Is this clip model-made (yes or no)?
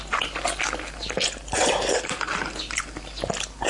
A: no